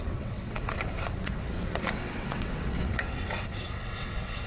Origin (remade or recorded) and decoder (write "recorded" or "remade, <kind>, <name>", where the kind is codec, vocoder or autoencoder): remade, vocoder, WaveNeXt